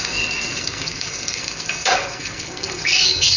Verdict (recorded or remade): remade